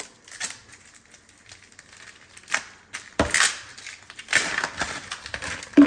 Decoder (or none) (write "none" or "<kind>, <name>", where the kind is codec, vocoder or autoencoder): none